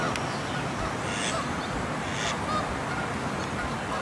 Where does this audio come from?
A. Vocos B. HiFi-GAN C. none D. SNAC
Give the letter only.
C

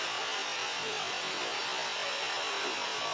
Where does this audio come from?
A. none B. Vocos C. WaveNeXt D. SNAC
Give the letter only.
A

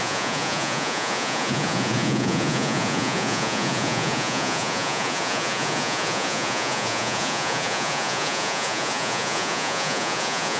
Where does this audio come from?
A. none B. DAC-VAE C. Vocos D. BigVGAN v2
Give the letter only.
C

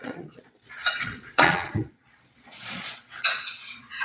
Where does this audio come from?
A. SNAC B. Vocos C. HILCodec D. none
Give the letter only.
B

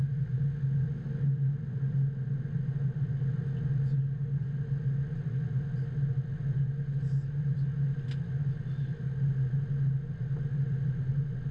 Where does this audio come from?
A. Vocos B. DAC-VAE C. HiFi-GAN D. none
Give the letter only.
D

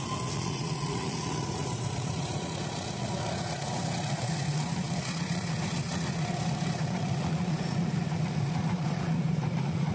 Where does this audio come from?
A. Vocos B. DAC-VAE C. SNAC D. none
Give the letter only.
A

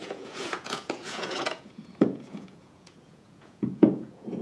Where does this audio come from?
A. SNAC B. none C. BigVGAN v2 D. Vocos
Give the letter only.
D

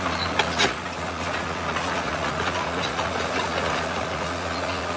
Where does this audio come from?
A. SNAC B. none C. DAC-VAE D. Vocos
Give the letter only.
D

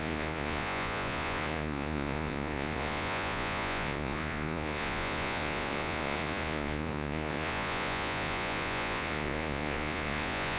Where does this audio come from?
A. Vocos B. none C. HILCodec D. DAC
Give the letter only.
A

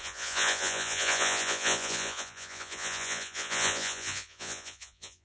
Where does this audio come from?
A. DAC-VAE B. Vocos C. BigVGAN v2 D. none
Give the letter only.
B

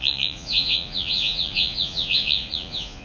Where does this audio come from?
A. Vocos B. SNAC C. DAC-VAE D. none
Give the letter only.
A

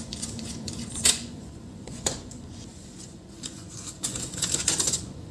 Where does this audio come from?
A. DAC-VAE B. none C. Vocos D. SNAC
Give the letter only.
C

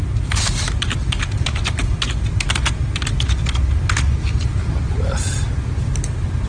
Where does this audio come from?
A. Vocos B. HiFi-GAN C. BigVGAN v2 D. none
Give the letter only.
D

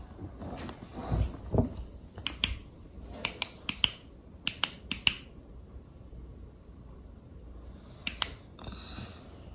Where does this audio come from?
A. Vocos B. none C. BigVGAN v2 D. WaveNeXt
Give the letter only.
B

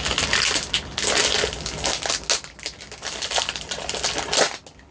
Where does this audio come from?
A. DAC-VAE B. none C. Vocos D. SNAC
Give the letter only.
B